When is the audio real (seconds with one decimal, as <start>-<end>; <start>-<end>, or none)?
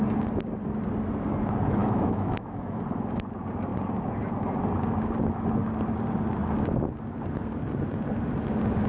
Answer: 0.0-1.8; 2.8-8.9